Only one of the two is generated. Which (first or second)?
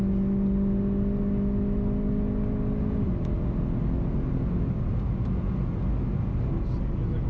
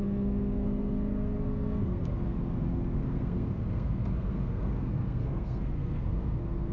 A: second